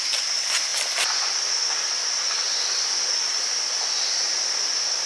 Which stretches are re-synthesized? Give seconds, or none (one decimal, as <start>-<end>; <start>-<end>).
0.7-3.8

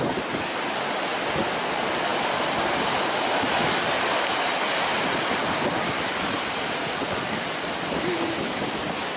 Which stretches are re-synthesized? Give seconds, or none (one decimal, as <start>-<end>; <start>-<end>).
4.9-9.2